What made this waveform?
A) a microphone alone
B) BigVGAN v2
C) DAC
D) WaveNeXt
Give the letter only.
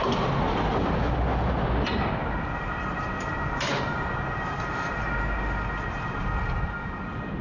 A